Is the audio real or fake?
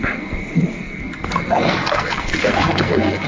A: fake